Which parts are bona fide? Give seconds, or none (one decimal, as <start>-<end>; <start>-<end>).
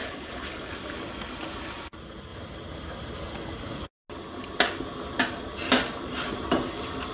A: 0.7-7.1